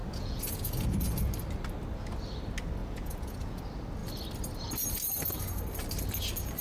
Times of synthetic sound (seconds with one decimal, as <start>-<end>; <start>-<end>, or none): 0.0-1.3; 2.8-3.6